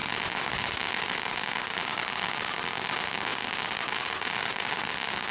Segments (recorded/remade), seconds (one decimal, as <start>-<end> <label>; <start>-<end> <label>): 0.0-5.3 recorded